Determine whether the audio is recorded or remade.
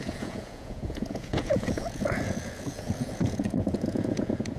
remade